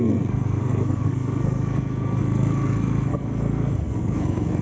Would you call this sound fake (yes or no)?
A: yes